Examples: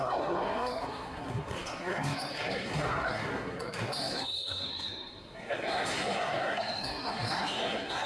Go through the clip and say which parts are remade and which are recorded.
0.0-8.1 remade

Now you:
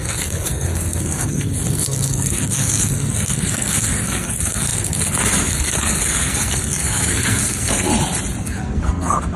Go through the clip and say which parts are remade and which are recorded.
0.0-7.9 remade; 7.9-8.4 recorded; 8.4-9.4 remade

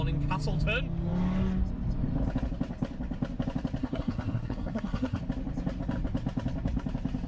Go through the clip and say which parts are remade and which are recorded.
0.0-3.8 recorded; 3.8-5.2 remade; 5.2-7.3 recorded

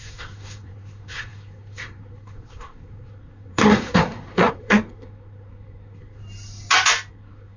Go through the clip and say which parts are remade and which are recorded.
0.0-6.2 remade; 6.2-7.1 recorded; 7.1-7.6 remade